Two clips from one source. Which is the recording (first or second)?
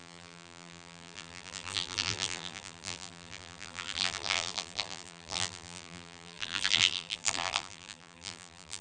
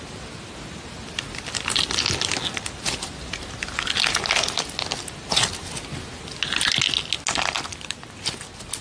second